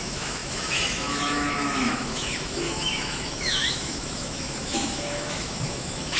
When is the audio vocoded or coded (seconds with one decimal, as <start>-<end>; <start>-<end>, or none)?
0.0-6.2